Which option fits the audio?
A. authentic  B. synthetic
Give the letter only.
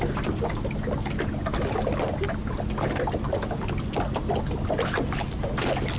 A